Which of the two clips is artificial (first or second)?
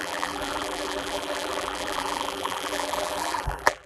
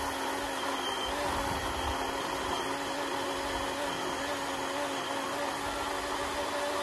first